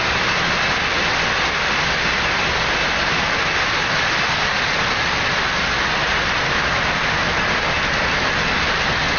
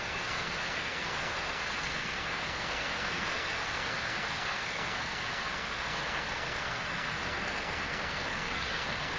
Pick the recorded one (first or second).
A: first